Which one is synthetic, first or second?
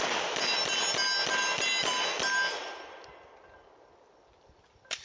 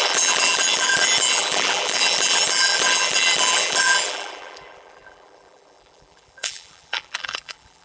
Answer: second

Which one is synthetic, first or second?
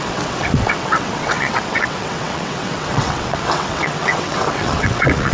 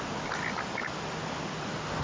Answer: first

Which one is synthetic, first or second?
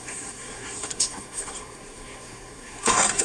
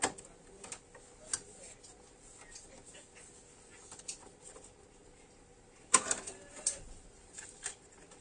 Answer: first